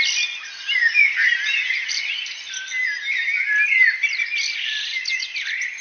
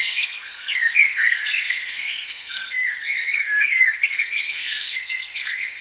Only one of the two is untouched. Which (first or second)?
first